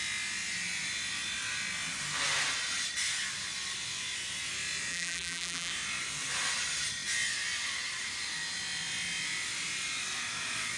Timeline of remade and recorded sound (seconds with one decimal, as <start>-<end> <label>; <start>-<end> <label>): 0.0-4.9 recorded; 4.9-5.7 remade; 5.7-10.8 recorded